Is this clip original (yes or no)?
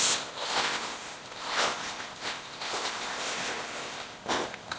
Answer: no